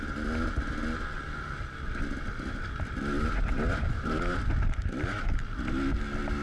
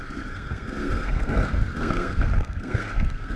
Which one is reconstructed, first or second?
second